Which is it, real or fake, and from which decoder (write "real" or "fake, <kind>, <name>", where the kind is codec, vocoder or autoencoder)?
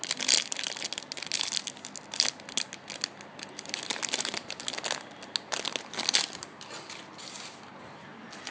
real